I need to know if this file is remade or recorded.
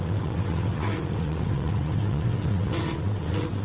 remade